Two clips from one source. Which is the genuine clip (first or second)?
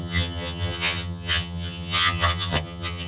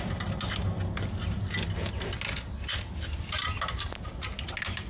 second